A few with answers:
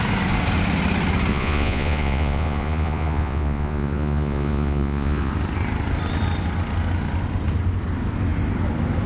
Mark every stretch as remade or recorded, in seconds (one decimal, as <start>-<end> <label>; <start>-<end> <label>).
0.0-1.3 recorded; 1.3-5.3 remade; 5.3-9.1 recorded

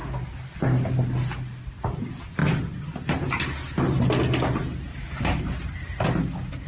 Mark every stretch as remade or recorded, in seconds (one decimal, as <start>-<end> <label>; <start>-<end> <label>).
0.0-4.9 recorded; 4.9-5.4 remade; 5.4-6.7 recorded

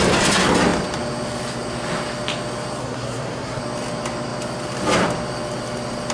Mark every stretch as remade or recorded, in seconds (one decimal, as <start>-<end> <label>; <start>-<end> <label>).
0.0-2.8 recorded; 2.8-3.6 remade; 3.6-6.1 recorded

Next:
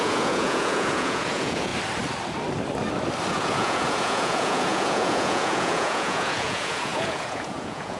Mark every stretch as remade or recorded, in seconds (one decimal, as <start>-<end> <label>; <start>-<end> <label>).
0.0-1.7 remade; 1.7-3.3 recorded; 3.3-8.0 remade